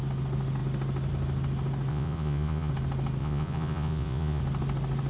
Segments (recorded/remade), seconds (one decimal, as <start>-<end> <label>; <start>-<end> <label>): 0.0-1.9 recorded; 1.9-2.7 remade; 2.7-3.2 recorded; 3.2-4.4 remade; 4.4-5.1 recorded